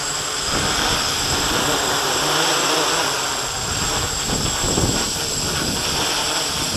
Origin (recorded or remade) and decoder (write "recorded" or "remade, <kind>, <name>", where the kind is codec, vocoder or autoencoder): recorded